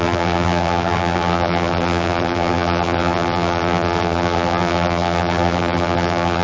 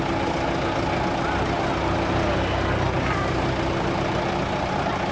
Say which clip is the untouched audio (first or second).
second